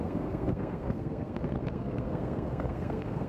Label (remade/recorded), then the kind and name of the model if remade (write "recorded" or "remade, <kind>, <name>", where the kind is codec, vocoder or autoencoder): remade, codec, SNAC